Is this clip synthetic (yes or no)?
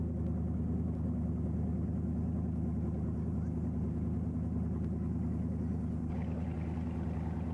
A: no